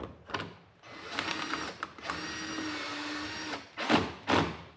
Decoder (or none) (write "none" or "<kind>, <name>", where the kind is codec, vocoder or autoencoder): none